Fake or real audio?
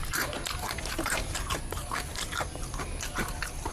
real